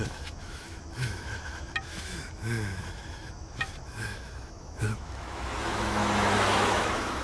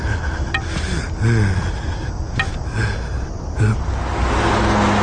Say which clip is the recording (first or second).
second